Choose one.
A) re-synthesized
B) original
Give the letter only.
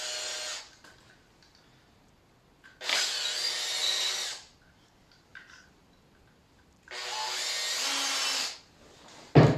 B